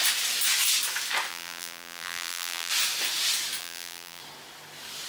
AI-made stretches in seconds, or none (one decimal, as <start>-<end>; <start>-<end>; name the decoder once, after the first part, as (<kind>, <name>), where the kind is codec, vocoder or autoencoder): 1.3-2.7 (vocoder, BigVGAN v2); 3.6-4.2